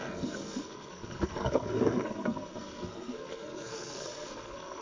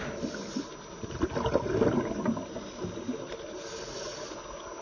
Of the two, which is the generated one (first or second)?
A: first